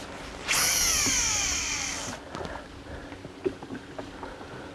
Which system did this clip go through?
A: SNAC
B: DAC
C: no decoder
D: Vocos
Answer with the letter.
C